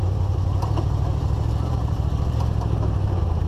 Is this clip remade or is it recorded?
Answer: remade